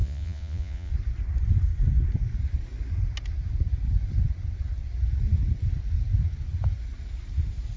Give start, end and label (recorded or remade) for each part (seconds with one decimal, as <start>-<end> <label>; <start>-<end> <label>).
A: 0.0-0.9 remade; 0.9-7.8 recorded